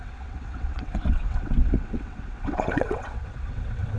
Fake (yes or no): yes